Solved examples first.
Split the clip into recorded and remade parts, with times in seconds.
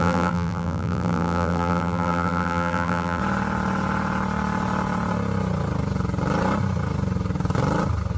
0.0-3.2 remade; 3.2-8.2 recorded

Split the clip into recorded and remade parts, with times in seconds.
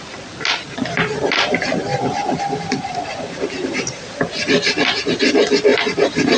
0.0-1.9 recorded; 1.9-4.0 remade; 4.0-5.7 recorded; 5.7-6.4 remade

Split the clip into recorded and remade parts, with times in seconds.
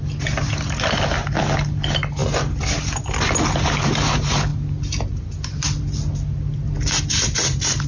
0.0-7.9 recorded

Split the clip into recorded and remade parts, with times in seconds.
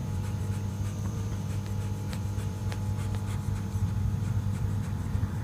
0.0-1.3 remade; 1.3-2.1 recorded; 2.1-2.6 remade; 2.6-4.3 recorded; 4.3-5.4 remade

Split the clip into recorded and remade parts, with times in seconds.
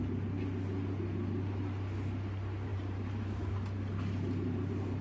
0.0-2.7 recorded; 2.7-3.4 remade; 3.4-5.0 recorded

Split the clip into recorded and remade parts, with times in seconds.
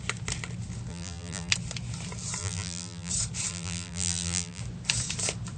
0.0-0.9 recorded; 0.9-1.5 remade; 1.5-2.4 recorded; 2.4-3.1 remade; 3.1-3.5 recorded; 3.5-4.6 remade; 4.6-5.6 recorded